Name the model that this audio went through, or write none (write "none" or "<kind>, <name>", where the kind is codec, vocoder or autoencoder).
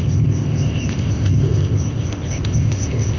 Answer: codec, ZipCodec